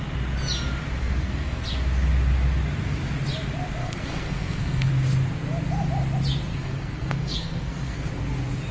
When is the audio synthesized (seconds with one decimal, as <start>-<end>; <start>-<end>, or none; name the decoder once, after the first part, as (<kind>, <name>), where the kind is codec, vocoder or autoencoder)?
1.0-1.6 (codec, SNAC); 3.8-4.9; 6.5-8.1

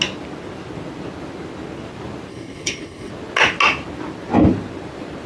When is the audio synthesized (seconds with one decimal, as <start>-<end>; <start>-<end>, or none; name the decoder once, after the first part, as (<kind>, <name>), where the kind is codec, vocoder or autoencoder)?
2.3-3.1 (codec, HILCodec)